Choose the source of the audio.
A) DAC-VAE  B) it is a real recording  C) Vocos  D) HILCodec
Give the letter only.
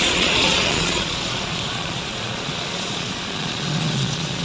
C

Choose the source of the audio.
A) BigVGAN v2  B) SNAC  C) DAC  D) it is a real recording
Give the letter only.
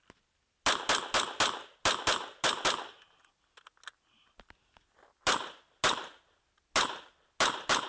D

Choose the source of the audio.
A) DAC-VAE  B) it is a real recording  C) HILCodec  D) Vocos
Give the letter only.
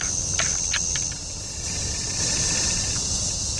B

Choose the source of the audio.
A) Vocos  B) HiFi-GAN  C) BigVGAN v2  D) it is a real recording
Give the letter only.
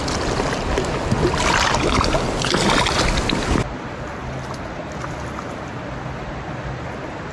D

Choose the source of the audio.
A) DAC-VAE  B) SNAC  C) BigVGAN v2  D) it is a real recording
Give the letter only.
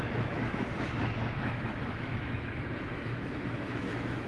A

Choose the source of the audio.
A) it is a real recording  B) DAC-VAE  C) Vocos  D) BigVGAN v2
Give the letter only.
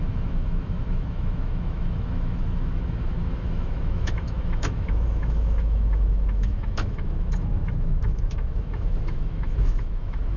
B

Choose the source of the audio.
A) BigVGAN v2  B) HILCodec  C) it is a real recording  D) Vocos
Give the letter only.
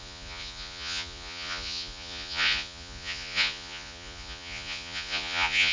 D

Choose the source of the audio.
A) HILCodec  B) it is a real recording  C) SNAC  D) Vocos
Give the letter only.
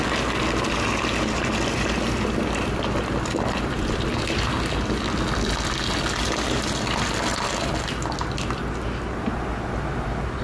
B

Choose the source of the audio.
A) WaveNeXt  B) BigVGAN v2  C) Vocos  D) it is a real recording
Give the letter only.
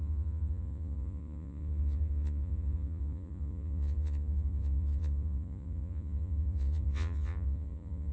C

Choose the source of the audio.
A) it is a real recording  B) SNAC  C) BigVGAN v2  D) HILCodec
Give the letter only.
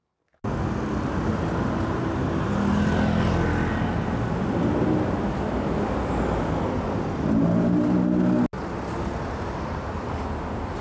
A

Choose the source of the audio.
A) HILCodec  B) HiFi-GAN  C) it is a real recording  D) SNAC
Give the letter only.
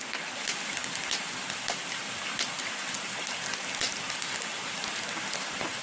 C